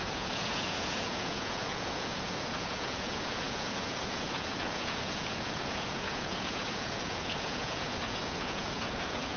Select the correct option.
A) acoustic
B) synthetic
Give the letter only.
B